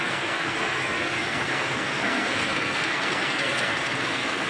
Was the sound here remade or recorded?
remade